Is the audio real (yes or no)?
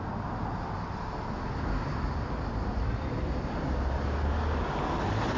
yes